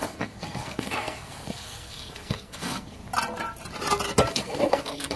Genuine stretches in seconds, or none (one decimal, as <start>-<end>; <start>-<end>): 3.0-4.3